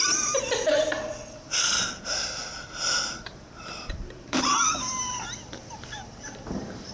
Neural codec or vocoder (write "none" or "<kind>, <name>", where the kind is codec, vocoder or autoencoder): vocoder, BigVGAN v2